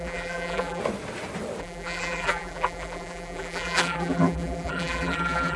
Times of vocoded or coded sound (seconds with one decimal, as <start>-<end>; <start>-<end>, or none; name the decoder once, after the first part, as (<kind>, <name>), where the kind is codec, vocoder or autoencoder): 0.0-0.8 (vocoder, BigVGAN v2); 1.6-5.6